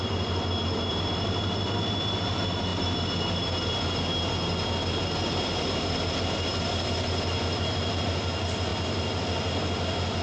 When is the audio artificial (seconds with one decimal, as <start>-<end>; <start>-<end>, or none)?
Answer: none

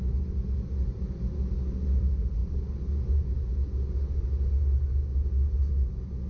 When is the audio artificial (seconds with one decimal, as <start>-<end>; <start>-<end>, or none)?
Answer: none

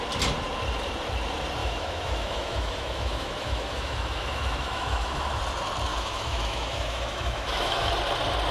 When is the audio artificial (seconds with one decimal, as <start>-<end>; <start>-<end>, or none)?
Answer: 1.6-5.4; 5.9-7.9

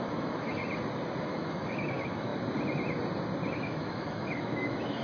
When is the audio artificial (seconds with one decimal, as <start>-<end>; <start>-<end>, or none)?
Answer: 0.0-0.6; 1.2-2.3; 3.5-5.0

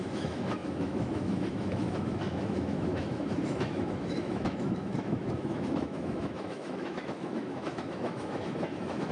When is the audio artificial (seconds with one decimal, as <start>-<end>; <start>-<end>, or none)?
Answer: 0.0-9.1

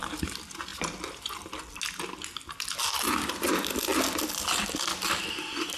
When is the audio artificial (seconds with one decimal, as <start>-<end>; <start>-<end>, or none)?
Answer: none